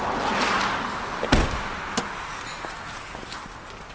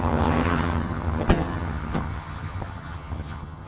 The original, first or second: first